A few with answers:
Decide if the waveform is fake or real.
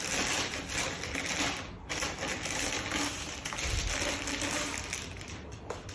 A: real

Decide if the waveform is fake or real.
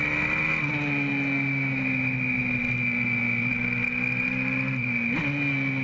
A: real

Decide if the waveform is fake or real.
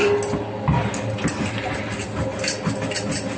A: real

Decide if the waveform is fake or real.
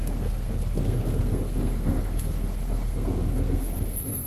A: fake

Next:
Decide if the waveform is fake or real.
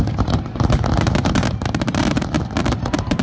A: fake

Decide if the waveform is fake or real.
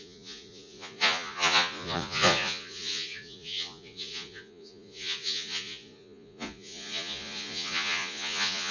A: fake